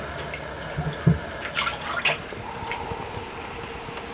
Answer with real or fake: real